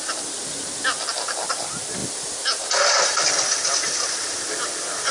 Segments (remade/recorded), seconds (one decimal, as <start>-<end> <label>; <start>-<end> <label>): 0.0-5.1 recorded